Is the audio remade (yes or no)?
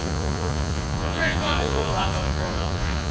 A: yes